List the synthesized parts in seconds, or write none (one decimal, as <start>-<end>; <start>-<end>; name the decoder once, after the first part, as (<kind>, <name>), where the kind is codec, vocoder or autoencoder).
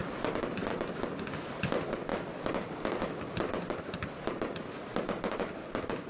none